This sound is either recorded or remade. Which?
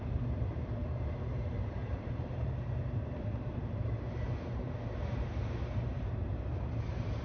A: remade